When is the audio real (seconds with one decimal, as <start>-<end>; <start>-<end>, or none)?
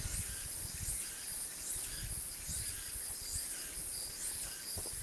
0.0-5.0